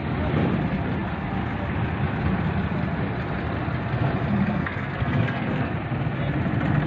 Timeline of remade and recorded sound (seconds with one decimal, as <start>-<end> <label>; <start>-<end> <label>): 0.0-4.5 recorded; 4.5-5.7 remade; 5.7-6.9 recorded